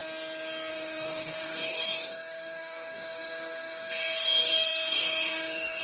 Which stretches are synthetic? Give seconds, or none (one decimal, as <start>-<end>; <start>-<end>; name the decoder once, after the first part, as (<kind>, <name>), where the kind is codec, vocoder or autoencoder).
0.7-5.8 (codec, DAC)